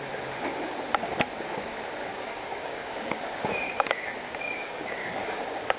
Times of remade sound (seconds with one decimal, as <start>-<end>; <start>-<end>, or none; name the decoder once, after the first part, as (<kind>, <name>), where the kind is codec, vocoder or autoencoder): 2.1-5.8 (codec, DAC)